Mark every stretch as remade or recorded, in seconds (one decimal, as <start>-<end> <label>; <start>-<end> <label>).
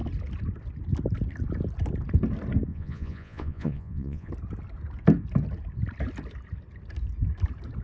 0.0-2.7 recorded; 2.7-4.3 remade; 4.3-7.8 recorded